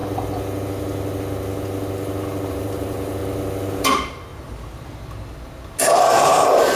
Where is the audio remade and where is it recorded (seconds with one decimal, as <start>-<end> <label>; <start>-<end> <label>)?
0.0-2.5 recorded; 2.5-3.2 remade; 3.2-3.9 recorded; 3.9-4.3 remade; 4.3-5.8 recorded; 5.8-6.8 remade